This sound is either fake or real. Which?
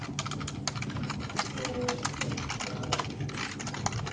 real